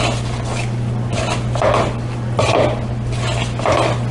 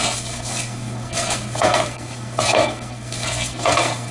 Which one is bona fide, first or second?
first